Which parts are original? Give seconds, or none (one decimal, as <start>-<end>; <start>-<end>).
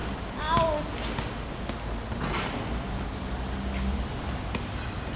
0.0-5.2